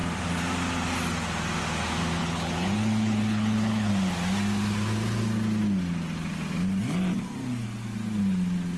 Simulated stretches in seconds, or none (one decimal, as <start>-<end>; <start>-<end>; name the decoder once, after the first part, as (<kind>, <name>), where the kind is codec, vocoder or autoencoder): 2.2-3.9 (codec, HILCodec)